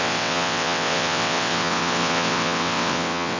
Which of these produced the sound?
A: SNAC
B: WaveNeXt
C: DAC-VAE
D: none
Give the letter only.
B